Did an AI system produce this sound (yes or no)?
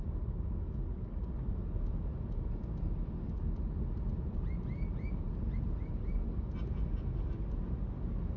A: no